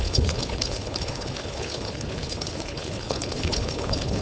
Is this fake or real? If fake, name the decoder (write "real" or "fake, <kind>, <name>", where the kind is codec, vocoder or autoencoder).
fake, codec, HILCodec